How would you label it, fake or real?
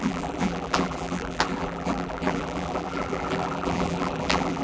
fake